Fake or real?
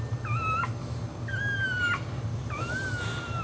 real